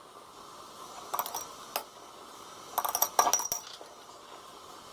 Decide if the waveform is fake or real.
real